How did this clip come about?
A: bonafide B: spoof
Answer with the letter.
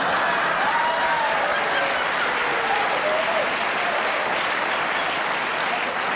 A